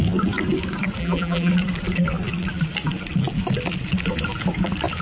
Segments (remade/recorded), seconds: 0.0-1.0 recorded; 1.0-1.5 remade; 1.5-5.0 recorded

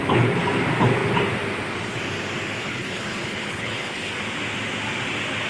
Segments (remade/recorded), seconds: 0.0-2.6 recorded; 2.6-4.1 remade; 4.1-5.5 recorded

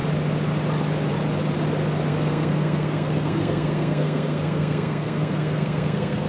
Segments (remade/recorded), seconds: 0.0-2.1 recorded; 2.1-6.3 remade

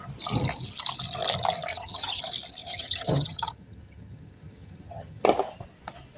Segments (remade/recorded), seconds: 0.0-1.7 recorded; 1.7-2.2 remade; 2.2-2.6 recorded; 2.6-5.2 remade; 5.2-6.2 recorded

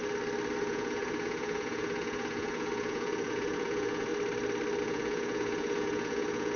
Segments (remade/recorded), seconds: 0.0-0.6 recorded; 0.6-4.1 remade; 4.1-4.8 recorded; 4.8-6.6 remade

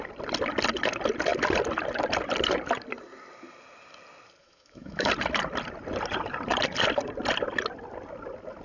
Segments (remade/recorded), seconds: 0.0-4.4 recorded; 4.4-5.1 remade; 5.1-8.6 recorded

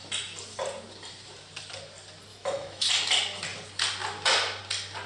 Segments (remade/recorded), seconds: 0.0-2.3 recorded; 2.3-2.9 remade; 2.9-5.1 recorded